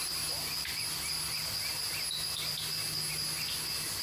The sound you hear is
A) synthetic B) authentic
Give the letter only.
B